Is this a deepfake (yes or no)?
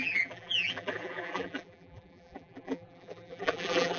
yes